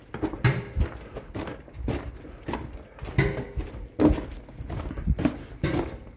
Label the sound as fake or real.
real